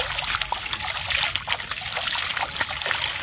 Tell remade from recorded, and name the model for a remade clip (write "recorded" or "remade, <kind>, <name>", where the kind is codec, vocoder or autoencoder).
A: recorded